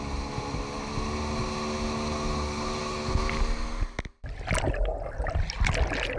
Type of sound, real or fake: real